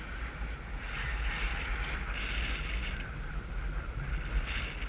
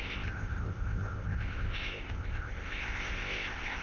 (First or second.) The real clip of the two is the first